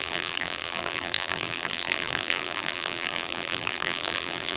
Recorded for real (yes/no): no